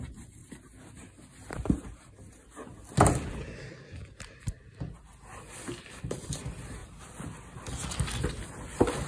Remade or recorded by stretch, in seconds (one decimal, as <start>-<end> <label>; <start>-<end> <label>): 0.0-9.1 recorded